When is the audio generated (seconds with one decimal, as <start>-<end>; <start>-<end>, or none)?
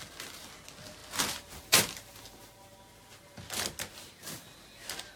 none